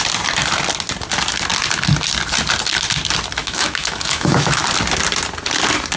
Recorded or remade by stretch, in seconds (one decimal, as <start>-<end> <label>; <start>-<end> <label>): 0.0-3.4 recorded; 3.4-4.6 remade; 4.6-6.0 recorded